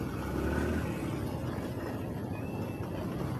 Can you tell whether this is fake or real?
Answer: real